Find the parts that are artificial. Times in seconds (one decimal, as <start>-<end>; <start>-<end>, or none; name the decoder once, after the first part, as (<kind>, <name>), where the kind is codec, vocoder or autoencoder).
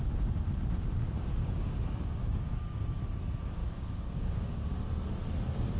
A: 1.4-3.0 (codec, DAC); 3.6-4.8